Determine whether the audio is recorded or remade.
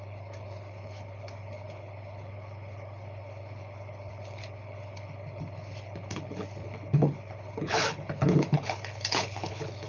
remade